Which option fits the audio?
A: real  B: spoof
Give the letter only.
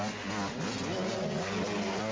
A